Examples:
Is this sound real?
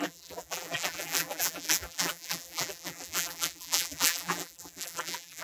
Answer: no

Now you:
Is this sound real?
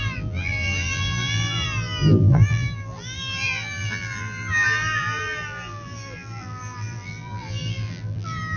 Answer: no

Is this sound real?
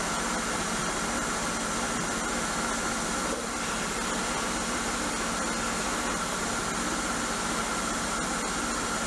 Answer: yes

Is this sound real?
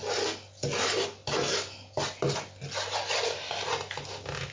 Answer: yes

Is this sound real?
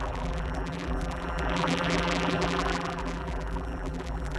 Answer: no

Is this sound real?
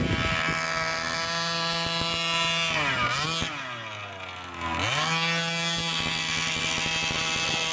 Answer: yes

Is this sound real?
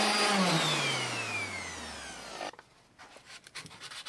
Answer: yes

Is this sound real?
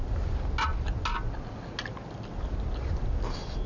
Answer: yes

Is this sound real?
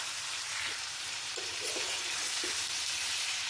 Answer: no